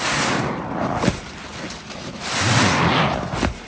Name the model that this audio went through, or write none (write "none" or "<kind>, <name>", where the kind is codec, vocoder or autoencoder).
none